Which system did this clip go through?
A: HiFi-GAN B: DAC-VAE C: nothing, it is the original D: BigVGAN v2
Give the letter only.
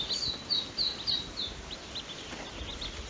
C